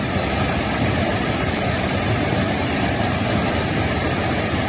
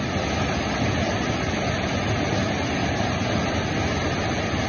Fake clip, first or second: first